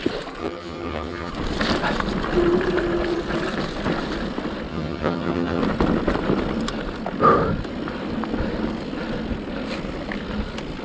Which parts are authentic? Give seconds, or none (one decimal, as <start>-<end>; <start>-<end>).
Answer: 0.0-0.4; 1.3-4.7; 5.6-10.8